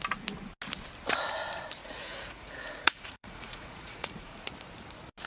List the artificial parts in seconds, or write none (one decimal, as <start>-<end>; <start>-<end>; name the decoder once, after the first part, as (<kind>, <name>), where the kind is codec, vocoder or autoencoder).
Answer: 1.8-4.4 (vocoder, Vocos)